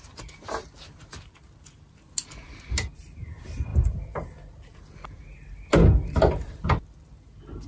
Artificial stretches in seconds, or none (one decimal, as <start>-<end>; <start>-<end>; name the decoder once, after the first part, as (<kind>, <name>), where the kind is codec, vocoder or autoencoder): none